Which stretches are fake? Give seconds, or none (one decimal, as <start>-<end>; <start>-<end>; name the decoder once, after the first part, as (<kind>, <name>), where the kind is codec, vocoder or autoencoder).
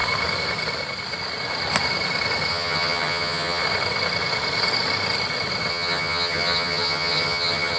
2.5-3.6 (vocoder, HiFi-GAN); 5.7-7.8